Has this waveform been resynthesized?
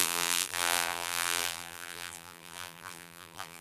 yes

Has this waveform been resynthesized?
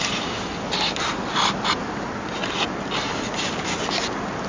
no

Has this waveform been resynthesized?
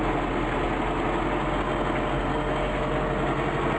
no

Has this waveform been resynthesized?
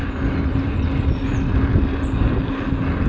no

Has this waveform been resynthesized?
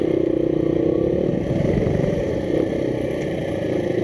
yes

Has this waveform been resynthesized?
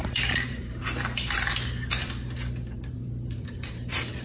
yes